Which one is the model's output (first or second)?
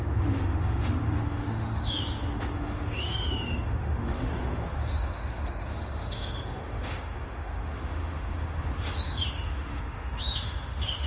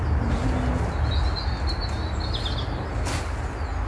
first